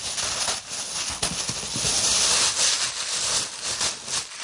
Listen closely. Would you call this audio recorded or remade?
recorded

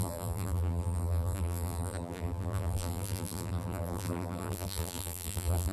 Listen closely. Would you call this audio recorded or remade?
remade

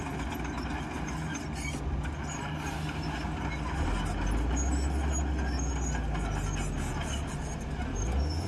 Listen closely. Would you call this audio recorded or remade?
recorded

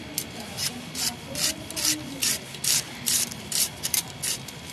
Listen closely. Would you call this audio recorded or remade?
remade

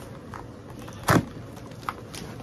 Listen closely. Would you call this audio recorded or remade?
recorded